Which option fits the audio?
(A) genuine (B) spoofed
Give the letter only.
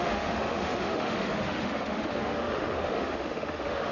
B